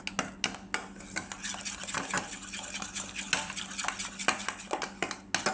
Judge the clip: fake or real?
real